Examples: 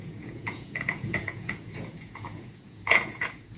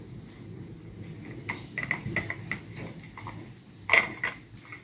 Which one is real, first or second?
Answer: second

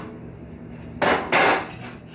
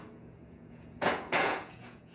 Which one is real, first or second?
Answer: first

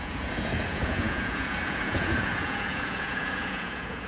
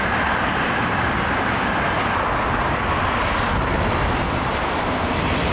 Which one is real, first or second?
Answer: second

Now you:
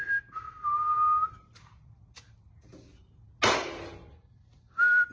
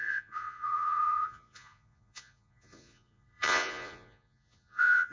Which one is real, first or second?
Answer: first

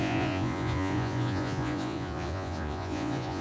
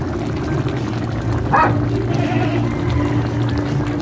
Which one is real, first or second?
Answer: second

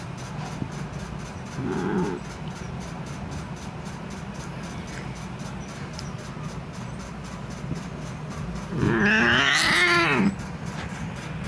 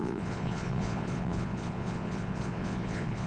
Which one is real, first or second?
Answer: first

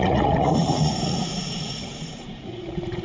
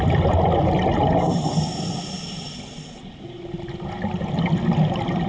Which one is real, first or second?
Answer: second